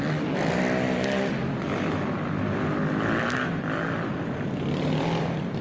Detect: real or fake real